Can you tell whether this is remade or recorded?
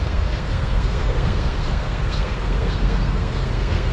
remade